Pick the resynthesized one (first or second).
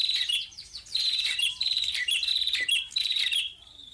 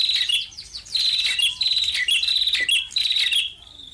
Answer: first